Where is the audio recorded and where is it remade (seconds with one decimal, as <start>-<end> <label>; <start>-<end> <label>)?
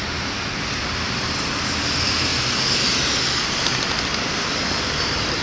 0.0-5.4 recorded